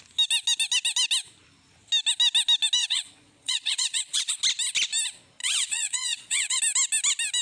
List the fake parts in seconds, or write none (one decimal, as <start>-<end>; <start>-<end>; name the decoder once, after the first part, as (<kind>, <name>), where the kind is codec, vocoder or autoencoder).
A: 2.8-4.3 (vocoder, Vocos); 5.4-6.6